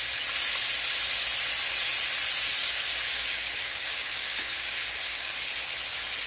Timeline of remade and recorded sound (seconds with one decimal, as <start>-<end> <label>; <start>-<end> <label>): 0.0-2.6 recorded; 2.6-5.5 remade; 5.5-6.3 recorded